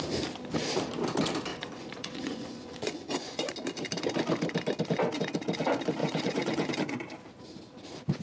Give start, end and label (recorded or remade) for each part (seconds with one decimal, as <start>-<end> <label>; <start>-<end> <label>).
0.0-1.5 recorded; 1.5-3.5 remade; 3.5-6.0 recorded; 6.0-6.7 remade; 6.7-8.2 recorded